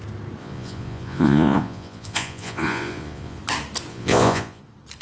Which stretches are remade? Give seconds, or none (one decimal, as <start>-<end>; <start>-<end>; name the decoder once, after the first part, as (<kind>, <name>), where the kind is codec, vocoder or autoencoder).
0.4-3.4 (vocoder, Vocos); 3.9-4.6